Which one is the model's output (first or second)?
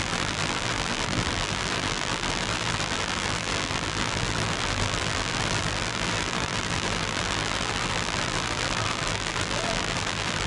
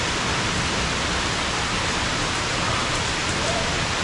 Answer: first